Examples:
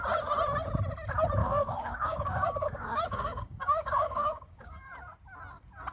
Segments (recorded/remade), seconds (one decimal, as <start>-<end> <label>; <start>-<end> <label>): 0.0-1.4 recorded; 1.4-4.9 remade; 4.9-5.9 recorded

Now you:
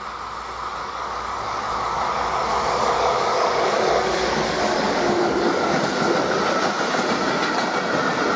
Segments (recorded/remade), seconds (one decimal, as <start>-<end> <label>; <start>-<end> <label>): 0.0-0.8 recorded; 0.8-5.8 remade; 5.8-8.4 recorded

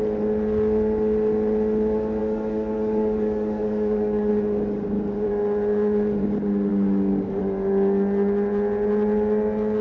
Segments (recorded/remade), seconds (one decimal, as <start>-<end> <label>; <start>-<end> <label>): 0.0-2.2 recorded; 2.2-4.3 remade; 4.3-6.7 recorded; 6.7-7.4 remade; 7.4-9.8 recorded

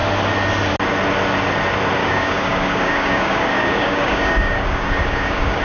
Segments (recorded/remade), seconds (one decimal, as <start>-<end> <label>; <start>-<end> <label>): 0.0-2.0 recorded; 2.0-5.6 remade